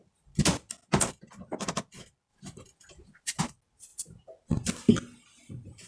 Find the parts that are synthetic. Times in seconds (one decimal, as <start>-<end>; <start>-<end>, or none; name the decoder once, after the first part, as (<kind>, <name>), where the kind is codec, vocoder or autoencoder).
2.3-3.4 (vocoder, BigVGAN v2)